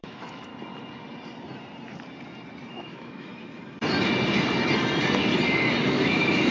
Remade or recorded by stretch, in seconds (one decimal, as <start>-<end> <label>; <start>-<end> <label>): 0.0-0.5 remade; 0.5-2.7 recorded; 2.7-3.3 remade; 3.3-5.9 recorded; 5.9-6.5 remade

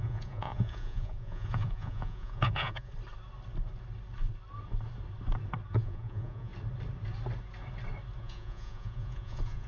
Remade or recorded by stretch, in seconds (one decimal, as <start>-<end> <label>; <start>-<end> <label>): 0.0-2.9 remade; 2.9-5.7 recorded; 5.7-6.5 remade; 6.5-8.2 recorded; 8.2-9.7 remade

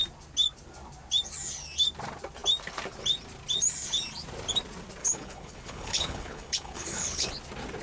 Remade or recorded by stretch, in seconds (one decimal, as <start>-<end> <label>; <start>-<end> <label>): 0.0-5.0 recorded; 5.0-7.3 remade; 7.3-7.8 recorded

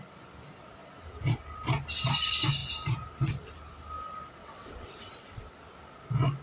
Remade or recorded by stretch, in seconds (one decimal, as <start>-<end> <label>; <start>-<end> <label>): 0.0-4.4 recorded; 4.4-5.4 remade; 5.4-6.4 recorded

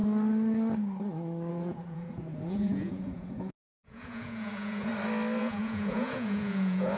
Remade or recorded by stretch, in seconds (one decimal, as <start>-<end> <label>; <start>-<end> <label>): 0.0-1.5 recorded; 1.5-4.9 remade; 4.9-5.4 recorded; 5.4-7.0 remade

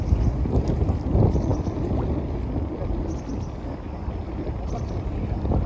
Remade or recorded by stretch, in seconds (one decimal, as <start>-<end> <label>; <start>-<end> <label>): 0.0-5.7 recorded